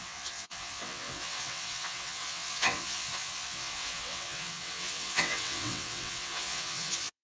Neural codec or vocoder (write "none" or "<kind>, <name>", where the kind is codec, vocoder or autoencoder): vocoder, WaveNeXt